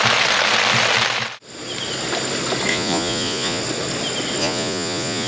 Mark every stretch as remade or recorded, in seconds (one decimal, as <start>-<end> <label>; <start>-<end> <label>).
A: 0.0-2.7 recorded; 2.7-3.6 remade; 3.6-4.4 recorded; 4.4-5.3 remade